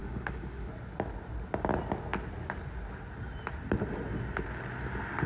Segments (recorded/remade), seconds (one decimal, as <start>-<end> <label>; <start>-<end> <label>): 0.0-0.7 remade; 0.7-5.3 recorded